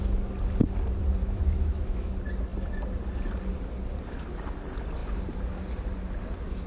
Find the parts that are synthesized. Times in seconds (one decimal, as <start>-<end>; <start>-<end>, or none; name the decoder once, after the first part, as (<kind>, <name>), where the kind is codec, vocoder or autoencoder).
1.2-2.1 (autoencoder, DAC-VAE)